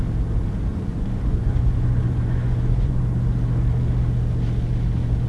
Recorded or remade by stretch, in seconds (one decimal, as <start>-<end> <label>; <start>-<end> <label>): 0.0-0.7 recorded; 0.7-3.0 remade; 3.0-5.3 recorded